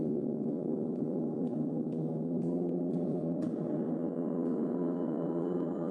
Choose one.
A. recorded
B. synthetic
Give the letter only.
B